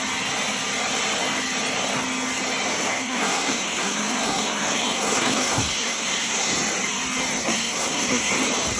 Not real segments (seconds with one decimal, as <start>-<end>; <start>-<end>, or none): 2.7-6.5; 7.4-8.3